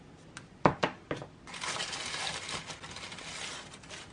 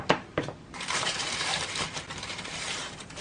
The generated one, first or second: second